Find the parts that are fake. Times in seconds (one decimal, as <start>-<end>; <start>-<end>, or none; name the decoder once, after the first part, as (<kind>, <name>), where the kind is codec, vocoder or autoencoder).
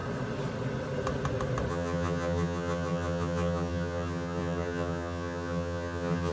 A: 1.7-6.3 (vocoder, HiFi-GAN)